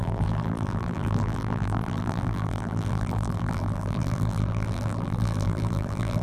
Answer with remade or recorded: remade